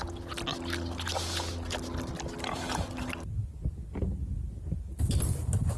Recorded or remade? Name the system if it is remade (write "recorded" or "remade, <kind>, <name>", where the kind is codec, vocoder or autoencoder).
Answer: recorded